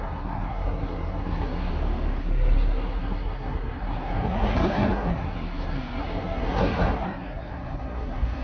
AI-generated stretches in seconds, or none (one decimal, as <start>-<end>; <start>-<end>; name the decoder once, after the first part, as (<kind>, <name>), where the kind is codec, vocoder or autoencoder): 0.0-1.7 (codec, SNAC); 2.2-8.4